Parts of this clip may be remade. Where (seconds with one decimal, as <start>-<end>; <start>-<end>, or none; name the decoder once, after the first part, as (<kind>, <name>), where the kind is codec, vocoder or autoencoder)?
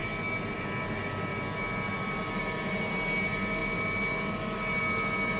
none